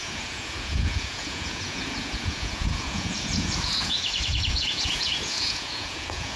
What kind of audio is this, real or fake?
fake